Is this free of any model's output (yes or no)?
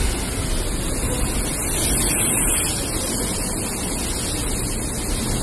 yes